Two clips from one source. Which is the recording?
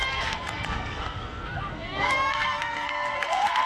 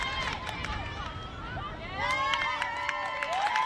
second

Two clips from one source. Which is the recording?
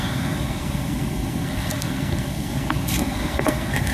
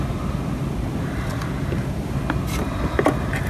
second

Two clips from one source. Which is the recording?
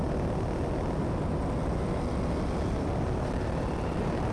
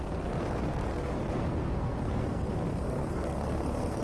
first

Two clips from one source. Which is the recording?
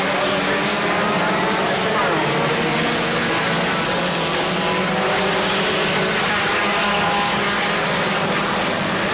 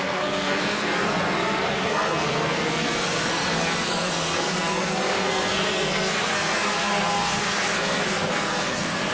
first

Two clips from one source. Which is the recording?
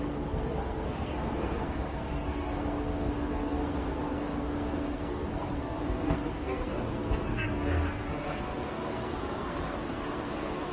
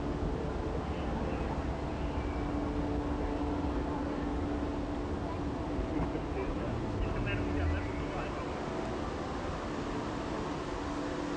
second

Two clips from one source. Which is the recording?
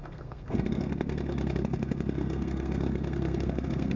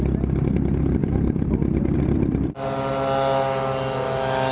second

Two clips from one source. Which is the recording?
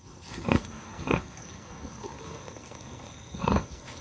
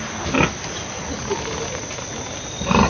second